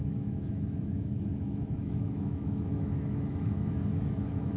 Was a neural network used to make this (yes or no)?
yes